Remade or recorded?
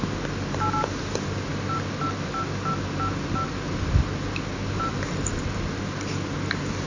recorded